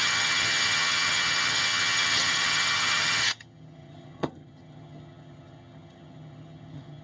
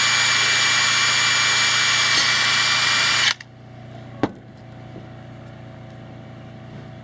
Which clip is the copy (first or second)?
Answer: first